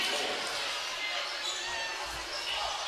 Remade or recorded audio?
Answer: recorded